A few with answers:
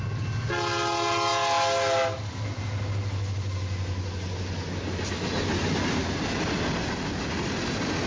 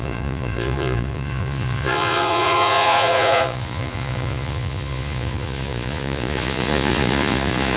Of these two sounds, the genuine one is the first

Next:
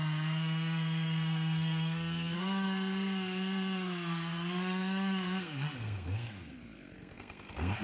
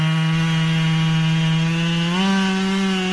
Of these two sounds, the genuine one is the second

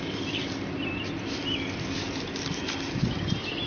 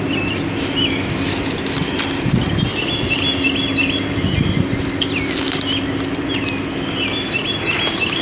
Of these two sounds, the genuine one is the second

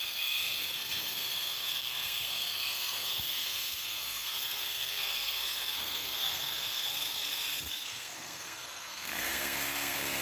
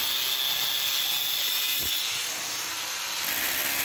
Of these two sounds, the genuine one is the second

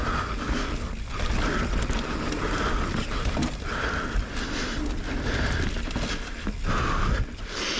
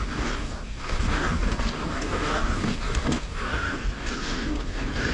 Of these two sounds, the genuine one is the first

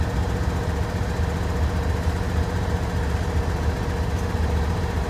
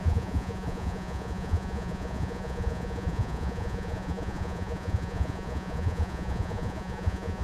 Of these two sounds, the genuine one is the first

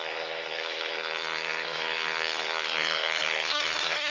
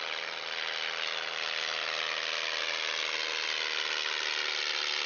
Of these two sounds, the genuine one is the second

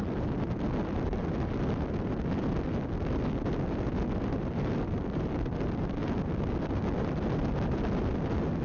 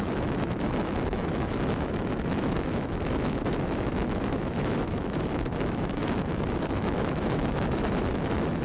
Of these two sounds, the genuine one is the first